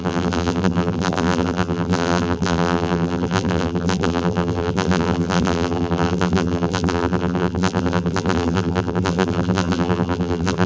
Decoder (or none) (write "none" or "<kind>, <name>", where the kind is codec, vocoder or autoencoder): vocoder, BigVGAN v2